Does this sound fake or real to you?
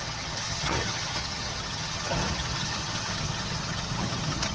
fake